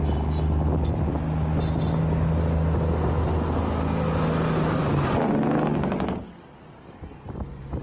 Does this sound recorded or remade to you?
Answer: recorded